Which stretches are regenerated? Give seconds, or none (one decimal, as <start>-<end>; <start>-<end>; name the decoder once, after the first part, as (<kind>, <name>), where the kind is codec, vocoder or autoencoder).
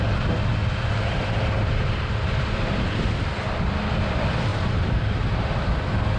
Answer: 0.6-3.0 (vocoder, BigVGAN v2); 4.5-5.2